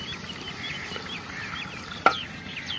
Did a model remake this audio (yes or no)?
no